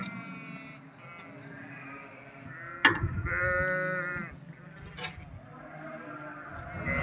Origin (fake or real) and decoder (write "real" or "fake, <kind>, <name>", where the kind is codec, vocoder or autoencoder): real